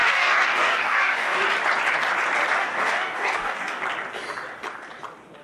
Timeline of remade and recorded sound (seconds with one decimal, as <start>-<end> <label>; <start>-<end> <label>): 0.0-1.4 remade; 1.4-2.6 recorded; 2.6-3.8 remade; 3.8-5.4 recorded